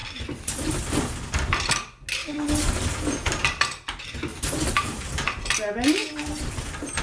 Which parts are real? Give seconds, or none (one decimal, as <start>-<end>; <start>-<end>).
1.7-2.2; 3.4-4.3; 5.2-7.0